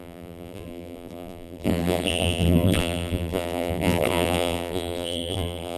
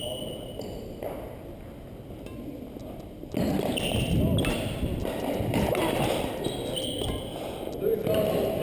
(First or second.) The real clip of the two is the second